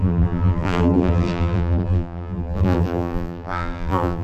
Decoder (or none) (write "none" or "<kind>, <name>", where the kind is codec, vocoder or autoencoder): vocoder, BigVGAN v2